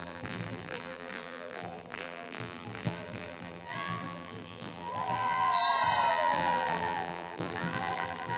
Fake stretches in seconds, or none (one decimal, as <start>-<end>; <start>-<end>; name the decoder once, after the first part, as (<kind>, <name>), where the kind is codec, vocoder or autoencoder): 0.0-5.6 (vocoder, BigVGAN v2); 6.1-8.4